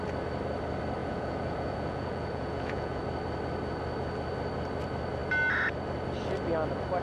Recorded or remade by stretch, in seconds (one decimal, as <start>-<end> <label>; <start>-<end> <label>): 0.0-1.0 recorded; 1.0-3.0 remade; 3.0-7.0 recorded